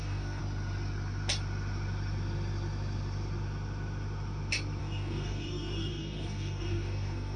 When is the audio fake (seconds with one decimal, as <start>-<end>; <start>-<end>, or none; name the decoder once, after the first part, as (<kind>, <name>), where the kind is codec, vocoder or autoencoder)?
0.0-0.4 (codec, DAC); 4.8-7.4